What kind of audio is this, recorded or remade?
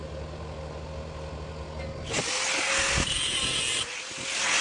recorded